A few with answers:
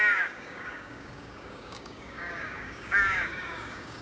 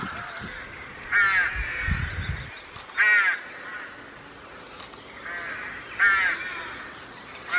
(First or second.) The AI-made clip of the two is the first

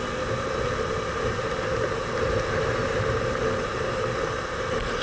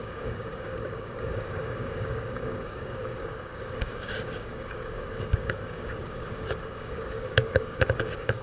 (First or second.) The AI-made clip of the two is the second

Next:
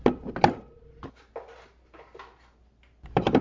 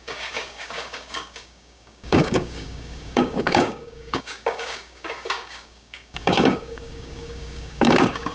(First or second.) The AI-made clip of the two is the second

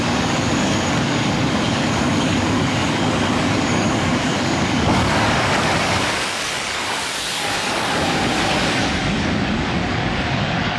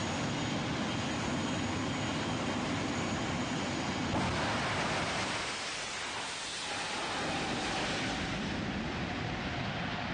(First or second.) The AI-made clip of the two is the first